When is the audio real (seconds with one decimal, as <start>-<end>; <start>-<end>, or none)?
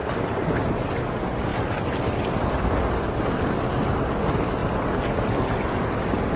0.9-1.5; 2.8-6.4